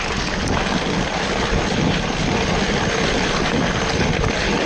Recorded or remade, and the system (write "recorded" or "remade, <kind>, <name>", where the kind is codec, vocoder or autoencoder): recorded